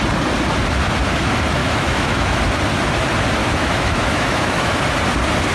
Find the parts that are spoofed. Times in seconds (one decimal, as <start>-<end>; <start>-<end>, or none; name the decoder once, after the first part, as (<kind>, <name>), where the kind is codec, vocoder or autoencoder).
1.6-2.4 (autoencoder, DAC-VAE); 3.4-4.8